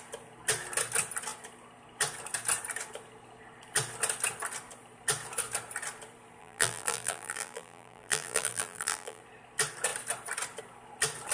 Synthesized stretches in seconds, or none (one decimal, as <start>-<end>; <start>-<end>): 6.4-9.2